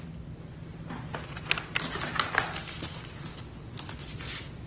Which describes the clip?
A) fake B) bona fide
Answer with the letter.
B